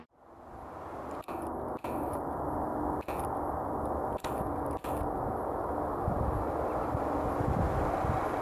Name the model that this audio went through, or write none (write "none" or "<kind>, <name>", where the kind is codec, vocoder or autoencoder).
none